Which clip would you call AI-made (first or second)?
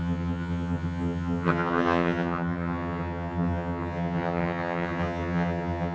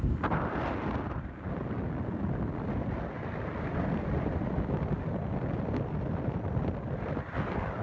first